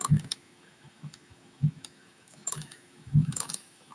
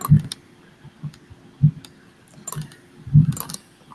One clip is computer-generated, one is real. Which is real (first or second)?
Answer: second